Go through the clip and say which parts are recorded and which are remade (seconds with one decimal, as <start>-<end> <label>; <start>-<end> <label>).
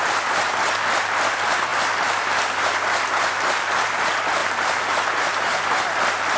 0.0-0.5 remade; 0.5-4.4 recorded; 4.4-5.6 remade; 5.6-6.4 recorded